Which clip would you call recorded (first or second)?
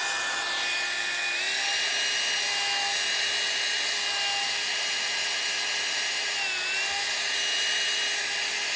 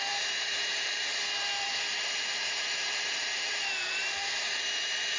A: first